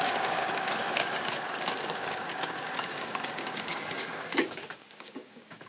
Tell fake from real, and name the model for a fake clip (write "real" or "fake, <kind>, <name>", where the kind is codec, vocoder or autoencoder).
fake, codec, DAC